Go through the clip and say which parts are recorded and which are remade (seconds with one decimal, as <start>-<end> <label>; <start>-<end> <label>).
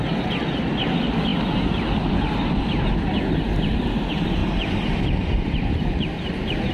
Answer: 0.0-6.7 recorded